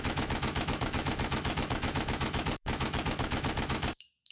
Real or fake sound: fake